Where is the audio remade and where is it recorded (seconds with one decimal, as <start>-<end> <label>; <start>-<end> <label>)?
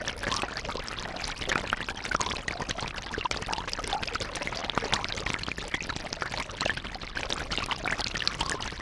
0.0-8.8 recorded